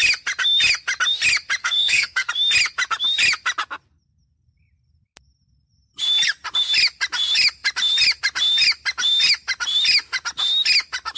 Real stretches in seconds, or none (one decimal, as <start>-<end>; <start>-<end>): 0.0-1.6; 2.3-11.2